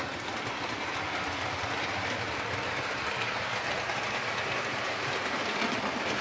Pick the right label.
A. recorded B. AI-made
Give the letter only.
A